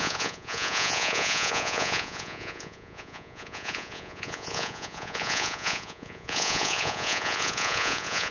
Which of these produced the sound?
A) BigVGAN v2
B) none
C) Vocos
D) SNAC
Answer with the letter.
C